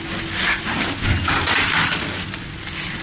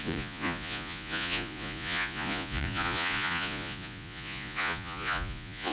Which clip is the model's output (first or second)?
second